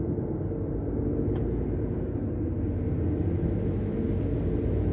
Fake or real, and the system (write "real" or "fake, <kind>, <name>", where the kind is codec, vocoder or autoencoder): real